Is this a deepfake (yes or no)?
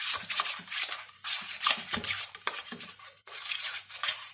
yes